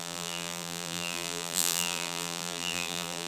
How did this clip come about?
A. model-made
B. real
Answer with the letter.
A